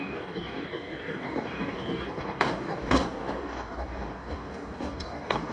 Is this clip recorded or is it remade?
remade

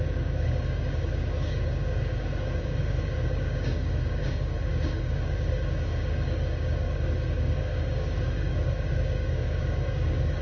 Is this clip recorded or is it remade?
remade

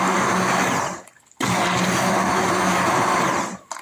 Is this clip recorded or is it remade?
recorded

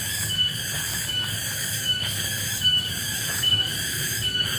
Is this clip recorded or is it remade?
remade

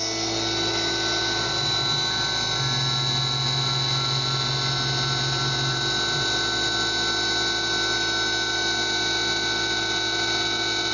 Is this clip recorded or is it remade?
recorded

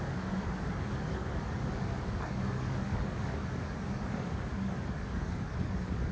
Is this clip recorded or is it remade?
remade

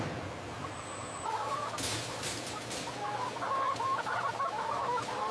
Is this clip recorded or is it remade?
recorded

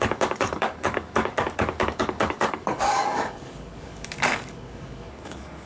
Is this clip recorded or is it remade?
remade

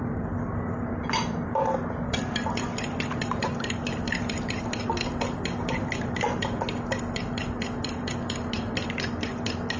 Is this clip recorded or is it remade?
recorded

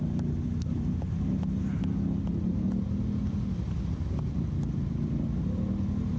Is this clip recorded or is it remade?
recorded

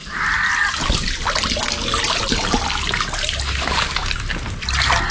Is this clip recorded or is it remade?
recorded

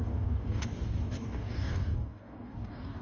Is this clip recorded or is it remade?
remade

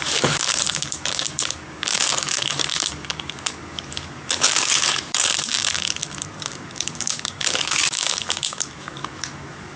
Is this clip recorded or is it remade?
remade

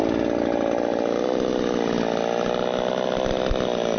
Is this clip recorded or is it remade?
recorded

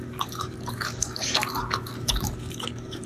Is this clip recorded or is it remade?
remade